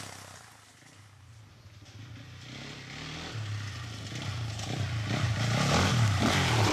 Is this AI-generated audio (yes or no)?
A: no